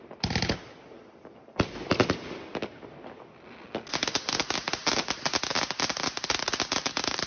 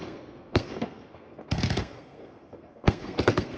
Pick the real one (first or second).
first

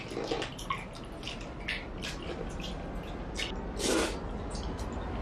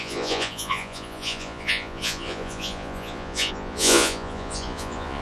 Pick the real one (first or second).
first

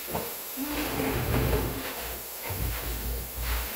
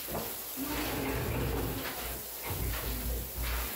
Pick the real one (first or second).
second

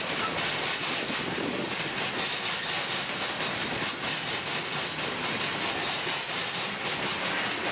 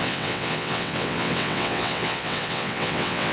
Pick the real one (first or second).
first